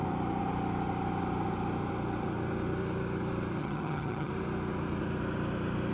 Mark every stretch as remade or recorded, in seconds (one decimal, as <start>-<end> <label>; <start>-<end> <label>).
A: 0.0-3.6 recorded; 3.6-4.3 remade; 4.3-5.9 recorded